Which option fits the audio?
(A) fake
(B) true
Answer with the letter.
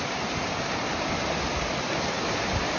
B